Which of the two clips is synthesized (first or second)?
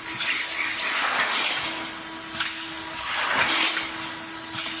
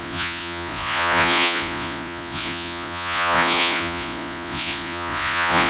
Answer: second